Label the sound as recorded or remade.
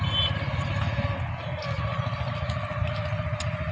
recorded